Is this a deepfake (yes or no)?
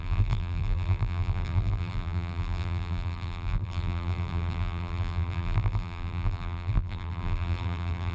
yes